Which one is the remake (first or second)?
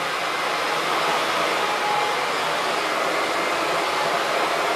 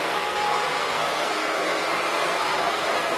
second